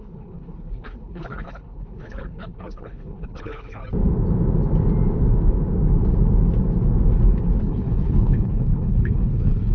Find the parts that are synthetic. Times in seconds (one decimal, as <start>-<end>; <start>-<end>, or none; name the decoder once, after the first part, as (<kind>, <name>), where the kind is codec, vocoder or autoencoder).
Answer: 0.0-3.8 (codec, HILCodec); 7.6-9.7